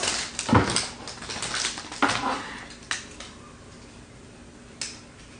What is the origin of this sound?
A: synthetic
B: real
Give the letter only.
B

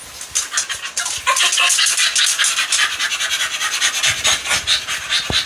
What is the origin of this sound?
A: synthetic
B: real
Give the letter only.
B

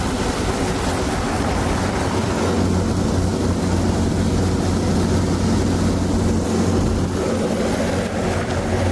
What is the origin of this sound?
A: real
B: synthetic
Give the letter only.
A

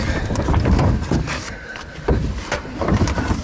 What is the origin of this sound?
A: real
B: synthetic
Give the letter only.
B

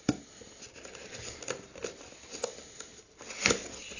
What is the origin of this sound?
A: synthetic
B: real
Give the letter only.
B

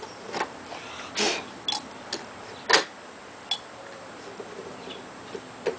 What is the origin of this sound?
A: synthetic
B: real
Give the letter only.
B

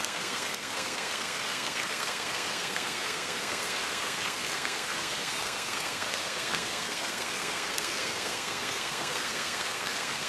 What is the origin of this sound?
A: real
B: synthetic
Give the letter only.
B